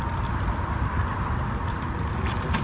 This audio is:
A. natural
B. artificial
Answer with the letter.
B